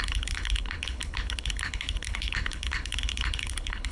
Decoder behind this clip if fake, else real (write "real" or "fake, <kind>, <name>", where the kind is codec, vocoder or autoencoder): fake, codec, HILCodec